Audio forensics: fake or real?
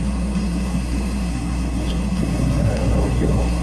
fake